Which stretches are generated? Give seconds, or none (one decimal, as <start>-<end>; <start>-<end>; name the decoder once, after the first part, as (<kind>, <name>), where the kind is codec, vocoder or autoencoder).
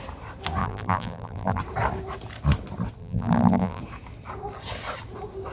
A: 0.6-1.6 (vocoder, BigVGAN v2); 3.0-3.8